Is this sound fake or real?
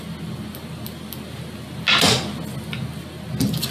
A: real